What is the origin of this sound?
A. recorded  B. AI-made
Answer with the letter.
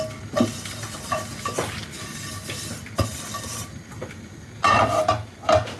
A